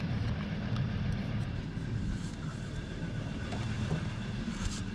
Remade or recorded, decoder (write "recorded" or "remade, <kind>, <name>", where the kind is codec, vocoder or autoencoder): remade, vocoder, BigVGAN v2